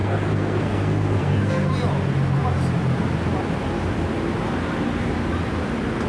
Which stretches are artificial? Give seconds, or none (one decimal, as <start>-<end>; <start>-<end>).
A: 0.0-1.7